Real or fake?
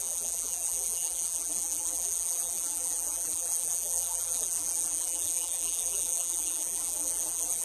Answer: fake